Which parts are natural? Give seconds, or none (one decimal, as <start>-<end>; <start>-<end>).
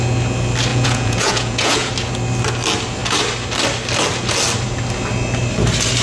0.0-0.7; 1.9-6.0